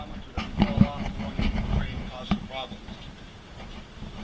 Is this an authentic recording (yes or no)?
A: yes